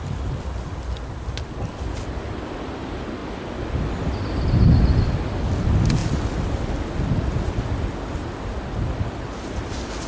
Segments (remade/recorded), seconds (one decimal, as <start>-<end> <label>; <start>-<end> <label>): 0.0-10.1 recorded